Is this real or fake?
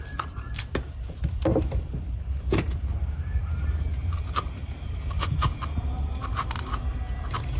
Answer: fake